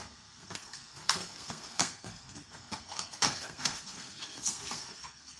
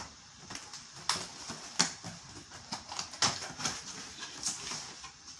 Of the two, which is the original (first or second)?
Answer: second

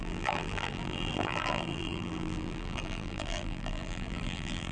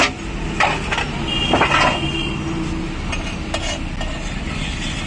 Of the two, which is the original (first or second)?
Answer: second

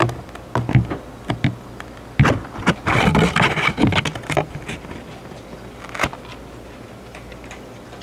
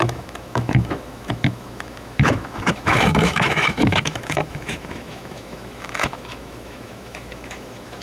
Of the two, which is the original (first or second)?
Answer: first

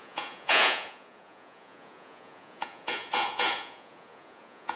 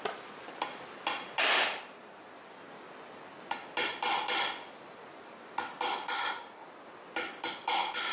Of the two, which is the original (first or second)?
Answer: second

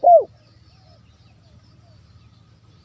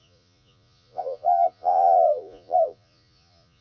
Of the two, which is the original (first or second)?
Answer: first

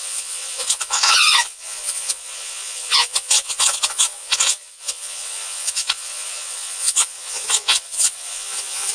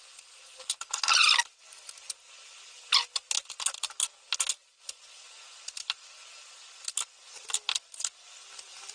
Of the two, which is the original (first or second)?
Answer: second